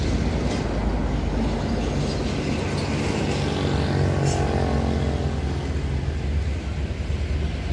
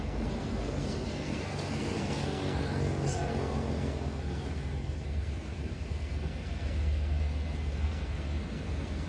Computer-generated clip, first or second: second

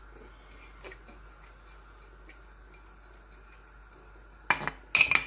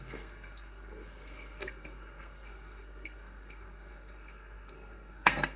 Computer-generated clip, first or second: second